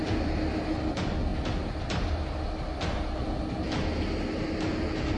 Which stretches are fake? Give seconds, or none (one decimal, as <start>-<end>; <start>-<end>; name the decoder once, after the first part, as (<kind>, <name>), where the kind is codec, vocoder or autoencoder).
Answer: none